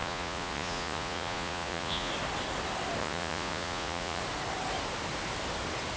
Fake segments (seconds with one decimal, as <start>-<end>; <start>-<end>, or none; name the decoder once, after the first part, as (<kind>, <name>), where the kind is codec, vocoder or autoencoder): 0.0-2.1 (vocoder, Vocos); 3.0-4.2